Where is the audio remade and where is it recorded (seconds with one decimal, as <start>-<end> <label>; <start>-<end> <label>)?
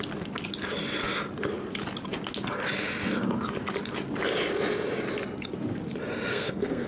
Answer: 0.0-6.3 recorded; 6.3-6.9 remade